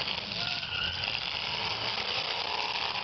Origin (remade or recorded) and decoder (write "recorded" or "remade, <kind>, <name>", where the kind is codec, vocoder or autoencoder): recorded